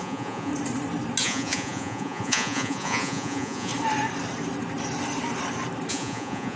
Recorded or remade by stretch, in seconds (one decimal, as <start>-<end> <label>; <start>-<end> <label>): 0.0-0.5 remade; 0.5-1.2 recorded; 1.2-3.7 remade; 3.7-5.9 recorded; 5.9-6.6 remade